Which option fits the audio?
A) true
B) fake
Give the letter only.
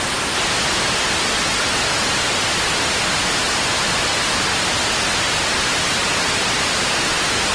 A